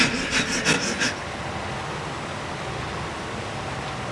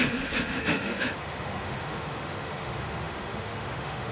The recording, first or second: first